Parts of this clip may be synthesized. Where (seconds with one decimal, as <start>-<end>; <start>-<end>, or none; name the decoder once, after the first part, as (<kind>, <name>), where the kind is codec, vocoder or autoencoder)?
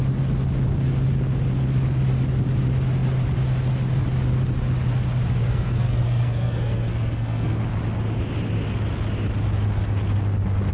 5.4-7.6 (codec, SNAC)